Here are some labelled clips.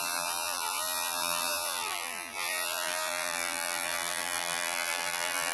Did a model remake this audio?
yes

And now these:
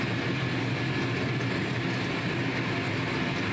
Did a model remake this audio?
no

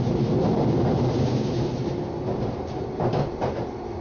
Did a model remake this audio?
no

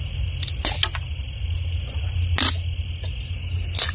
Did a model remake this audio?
no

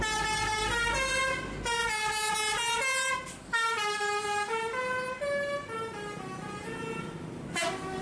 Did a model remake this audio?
no